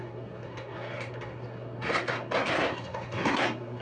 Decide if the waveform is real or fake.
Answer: fake